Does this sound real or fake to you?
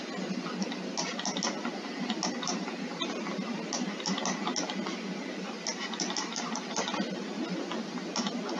real